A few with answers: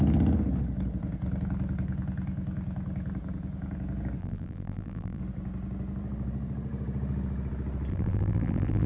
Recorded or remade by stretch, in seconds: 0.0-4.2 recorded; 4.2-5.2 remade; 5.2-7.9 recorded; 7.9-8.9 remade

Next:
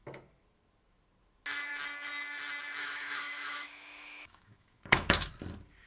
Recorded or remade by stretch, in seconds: 0.0-2.8 recorded; 2.8-5.3 remade; 5.3-5.9 recorded

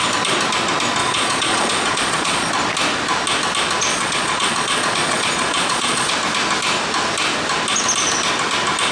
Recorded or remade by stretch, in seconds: 0.0-1.0 recorded; 1.0-2.5 remade; 2.5-3.9 recorded; 3.9-6.1 remade; 6.1-8.9 recorded